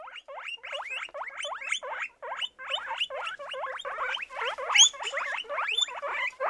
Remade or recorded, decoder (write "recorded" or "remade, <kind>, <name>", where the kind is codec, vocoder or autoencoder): recorded